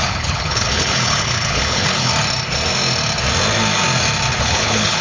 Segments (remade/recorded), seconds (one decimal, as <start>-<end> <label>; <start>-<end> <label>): 0.0-2.1 remade; 2.1-4.4 recorded; 4.4-5.0 remade